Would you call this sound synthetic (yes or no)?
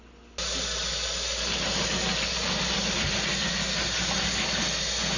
no